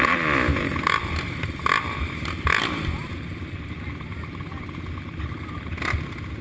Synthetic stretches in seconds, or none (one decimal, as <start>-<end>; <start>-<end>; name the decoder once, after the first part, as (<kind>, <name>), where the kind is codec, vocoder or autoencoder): none